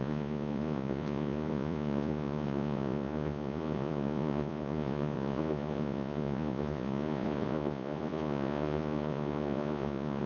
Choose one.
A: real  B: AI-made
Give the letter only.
B